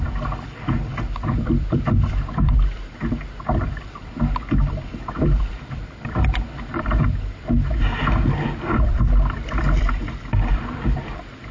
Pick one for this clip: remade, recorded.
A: remade